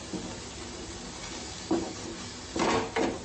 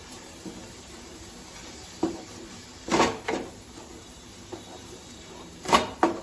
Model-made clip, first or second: second